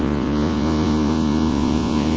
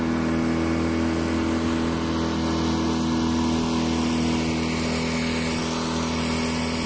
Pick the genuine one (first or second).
second